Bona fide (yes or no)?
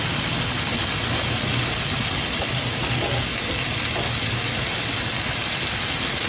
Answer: yes